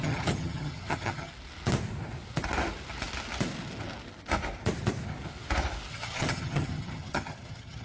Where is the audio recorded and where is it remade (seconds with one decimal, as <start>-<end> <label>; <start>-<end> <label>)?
0.0-1.3 remade; 1.3-5.9 recorded; 5.9-7.8 remade